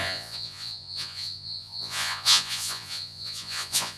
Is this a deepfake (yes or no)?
yes